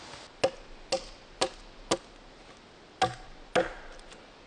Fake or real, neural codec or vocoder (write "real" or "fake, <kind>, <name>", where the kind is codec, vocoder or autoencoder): real